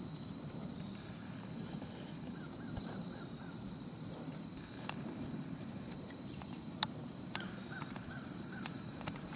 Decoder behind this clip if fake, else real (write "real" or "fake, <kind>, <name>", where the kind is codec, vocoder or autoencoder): fake, vocoder, BigVGAN v2